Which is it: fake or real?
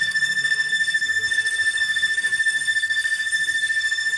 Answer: fake